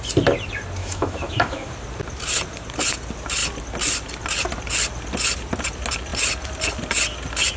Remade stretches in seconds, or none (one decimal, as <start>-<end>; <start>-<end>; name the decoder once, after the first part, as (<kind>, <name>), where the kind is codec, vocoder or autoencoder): 0.8-1.7 (autoencoder, DAC-VAE)